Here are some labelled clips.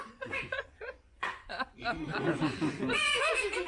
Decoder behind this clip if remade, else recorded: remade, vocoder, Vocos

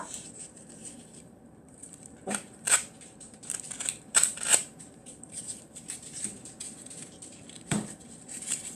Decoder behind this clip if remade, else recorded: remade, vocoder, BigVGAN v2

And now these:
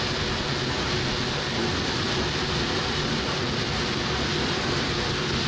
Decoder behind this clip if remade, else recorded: recorded